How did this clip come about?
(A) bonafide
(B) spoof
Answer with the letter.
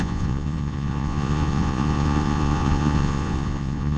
B